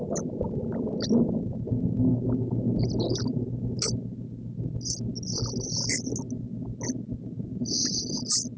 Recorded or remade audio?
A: recorded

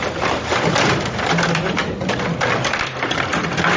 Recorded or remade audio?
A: remade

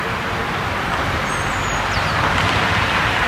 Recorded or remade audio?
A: recorded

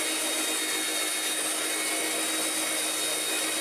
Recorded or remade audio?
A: recorded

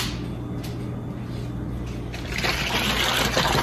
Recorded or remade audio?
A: recorded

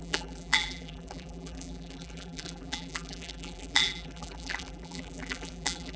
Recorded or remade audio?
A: remade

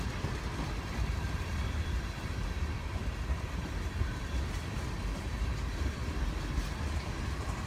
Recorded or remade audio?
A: remade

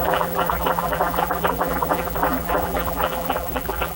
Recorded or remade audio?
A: remade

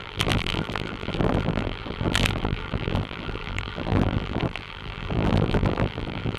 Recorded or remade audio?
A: remade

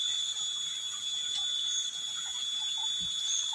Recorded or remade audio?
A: recorded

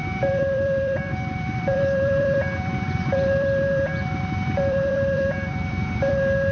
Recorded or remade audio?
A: remade